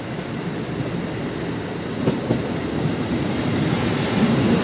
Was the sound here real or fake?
real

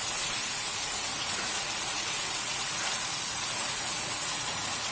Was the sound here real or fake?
fake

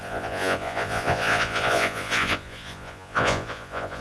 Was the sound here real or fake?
fake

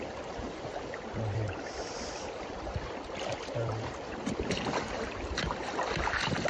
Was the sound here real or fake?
fake